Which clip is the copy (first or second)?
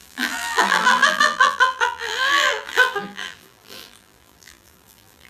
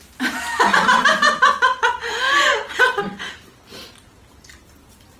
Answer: first